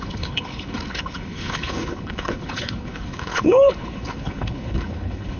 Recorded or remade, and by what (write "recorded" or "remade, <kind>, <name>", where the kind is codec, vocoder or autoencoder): remade, codec, HILCodec